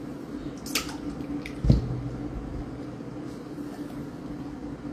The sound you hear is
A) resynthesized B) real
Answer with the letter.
B